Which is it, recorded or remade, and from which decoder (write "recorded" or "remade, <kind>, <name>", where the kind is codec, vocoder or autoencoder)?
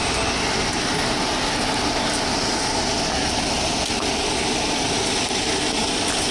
recorded